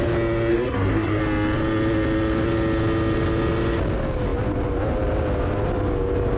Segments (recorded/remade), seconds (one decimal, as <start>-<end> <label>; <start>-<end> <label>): 0.0-0.5 recorded; 0.5-1.2 remade; 1.2-6.4 recorded